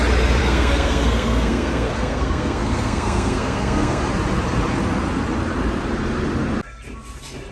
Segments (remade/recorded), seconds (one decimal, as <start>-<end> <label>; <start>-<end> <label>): 0.0-0.4 recorded; 0.4-4.0 remade; 4.0-7.5 recorded